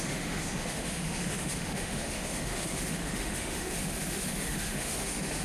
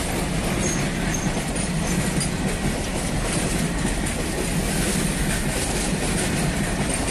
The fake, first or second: first